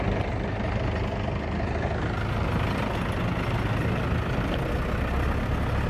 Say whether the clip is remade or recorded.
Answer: recorded